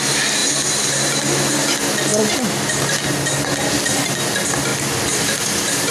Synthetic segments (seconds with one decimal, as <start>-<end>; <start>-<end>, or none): 4.7-5.9